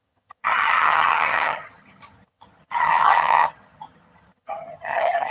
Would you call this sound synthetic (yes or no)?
yes